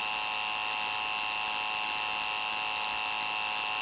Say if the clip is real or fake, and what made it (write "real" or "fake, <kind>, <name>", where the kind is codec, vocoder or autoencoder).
real